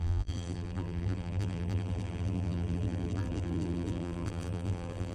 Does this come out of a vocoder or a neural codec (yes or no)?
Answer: yes